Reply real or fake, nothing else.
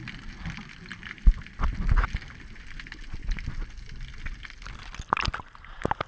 real